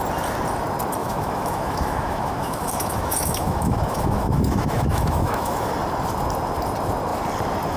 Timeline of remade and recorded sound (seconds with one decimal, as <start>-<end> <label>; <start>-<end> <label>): 0.0-1.0 recorded; 1.0-5.7 remade; 5.7-7.8 recorded